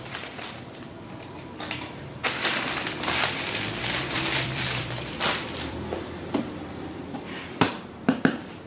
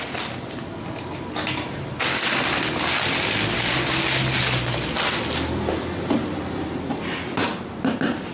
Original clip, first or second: second